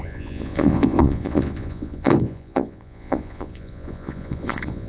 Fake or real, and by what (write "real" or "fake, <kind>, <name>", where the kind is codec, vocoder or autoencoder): fake, vocoder, Vocos